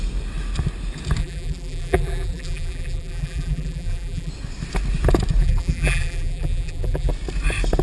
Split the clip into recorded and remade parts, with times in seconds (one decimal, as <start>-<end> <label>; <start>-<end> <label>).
0.0-1.2 recorded; 1.2-4.3 remade; 4.3-5.4 recorded; 5.4-7.1 remade; 7.1-7.8 recorded